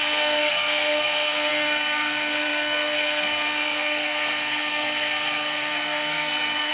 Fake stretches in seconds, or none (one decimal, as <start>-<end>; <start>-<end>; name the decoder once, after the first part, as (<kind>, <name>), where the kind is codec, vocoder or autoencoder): 0.0-6.7 (codec, SNAC)